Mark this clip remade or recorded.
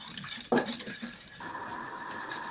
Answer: recorded